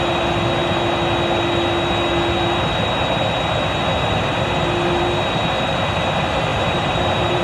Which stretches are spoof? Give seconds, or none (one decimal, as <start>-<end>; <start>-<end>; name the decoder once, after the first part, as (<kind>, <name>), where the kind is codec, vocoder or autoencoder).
6.5-7.4 (vocoder, BigVGAN v2)